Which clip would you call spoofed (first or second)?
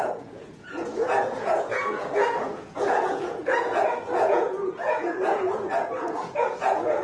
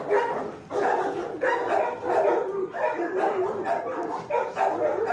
first